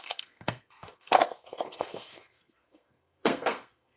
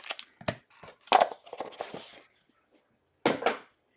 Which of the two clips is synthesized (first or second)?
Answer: first